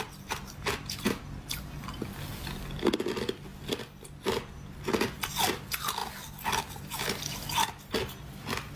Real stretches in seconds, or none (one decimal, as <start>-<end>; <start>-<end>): 0.0-8.8